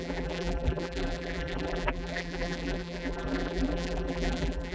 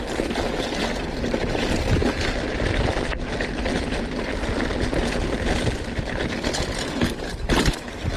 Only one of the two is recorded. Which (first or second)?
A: second